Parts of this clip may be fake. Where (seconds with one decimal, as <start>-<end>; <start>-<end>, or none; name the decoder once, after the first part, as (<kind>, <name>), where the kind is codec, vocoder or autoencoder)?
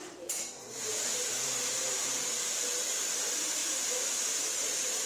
0.0-5.1 (vocoder, BigVGAN v2)